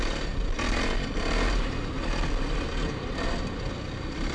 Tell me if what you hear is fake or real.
real